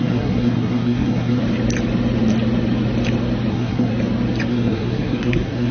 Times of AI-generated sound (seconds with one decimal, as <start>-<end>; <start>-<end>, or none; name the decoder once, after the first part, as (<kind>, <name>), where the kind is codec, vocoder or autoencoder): 0.0-1.4 (codec, SNAC); 3.5-3.9; 4.5-5.7